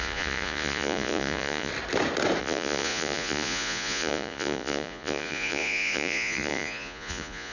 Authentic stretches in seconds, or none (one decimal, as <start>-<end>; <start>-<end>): 1.7-2.4